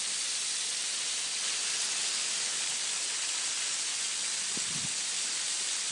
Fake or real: real